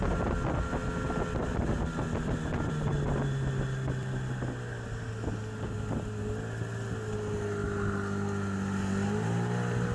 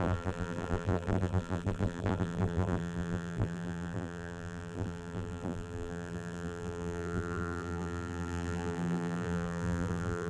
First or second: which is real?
first